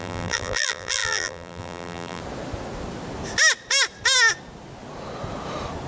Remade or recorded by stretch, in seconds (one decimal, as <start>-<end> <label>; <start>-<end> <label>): 0.0-2.2 remade; 2.2-5.9 recorded